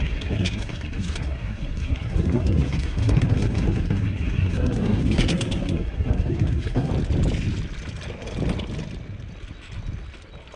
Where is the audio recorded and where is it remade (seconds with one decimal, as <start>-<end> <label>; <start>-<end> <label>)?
0.0-6.9 remade; 6.9-10.6 recorded